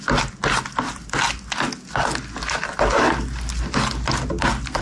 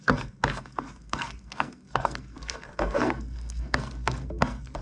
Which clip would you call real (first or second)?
first